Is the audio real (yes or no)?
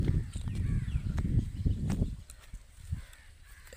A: yes